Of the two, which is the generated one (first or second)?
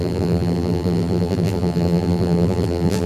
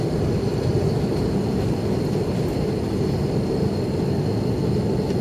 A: first